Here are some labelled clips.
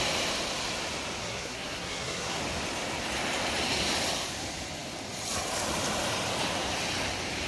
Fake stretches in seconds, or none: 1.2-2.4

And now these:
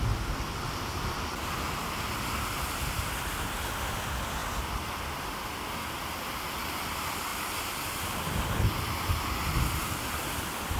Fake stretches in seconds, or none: none

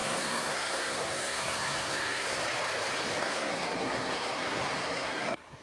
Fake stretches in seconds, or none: 0.0-2.4; 3.2-5.6

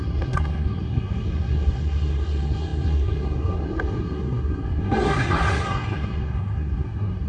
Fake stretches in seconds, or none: 0.0-7.3

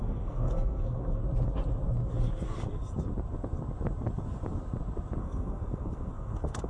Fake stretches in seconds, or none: 0.0-1.2; 5.2-6.7

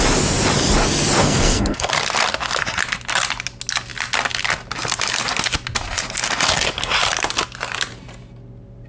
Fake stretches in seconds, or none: 1.2-1.9